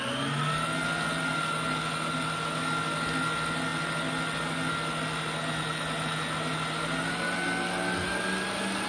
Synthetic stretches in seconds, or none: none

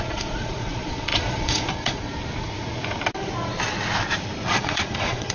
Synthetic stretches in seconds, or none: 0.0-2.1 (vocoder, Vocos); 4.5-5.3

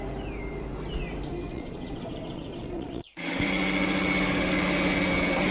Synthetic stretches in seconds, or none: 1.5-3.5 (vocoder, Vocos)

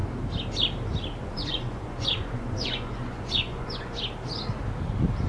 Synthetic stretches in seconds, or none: 1.2-4.0 (vocoder, Vocos)

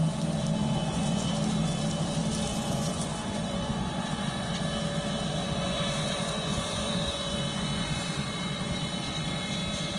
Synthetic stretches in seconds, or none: 0.6-1.3 (vocoder, Vocos); 2.5-4.6; 5.4-9.6

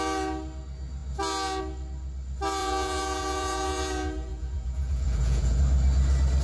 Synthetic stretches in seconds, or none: 2.6-5.6 (vocoder, Vocos)